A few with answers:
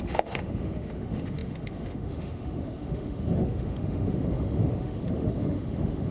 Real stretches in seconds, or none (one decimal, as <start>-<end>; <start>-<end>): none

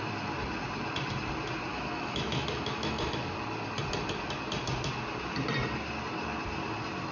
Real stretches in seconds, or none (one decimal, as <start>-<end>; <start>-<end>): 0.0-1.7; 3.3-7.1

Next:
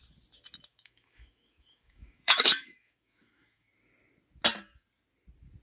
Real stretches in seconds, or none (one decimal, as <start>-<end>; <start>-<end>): 0.0-0.7; 3.7-5.6

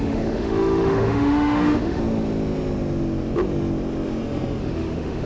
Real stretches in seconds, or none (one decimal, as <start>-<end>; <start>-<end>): 2.0-4.6